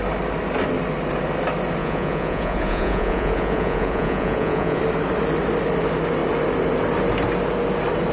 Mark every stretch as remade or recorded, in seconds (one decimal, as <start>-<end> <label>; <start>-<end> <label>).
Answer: 0.0-1.8 recorded; 1.8-4.8 remade; 4.8-8.1 recorded